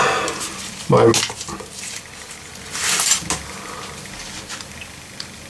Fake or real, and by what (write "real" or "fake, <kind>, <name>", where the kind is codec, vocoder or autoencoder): real